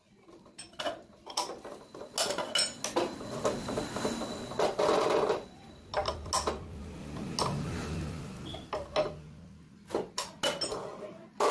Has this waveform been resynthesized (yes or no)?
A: no